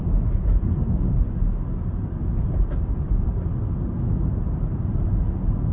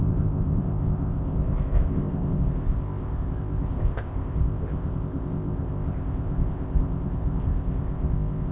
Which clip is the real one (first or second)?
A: first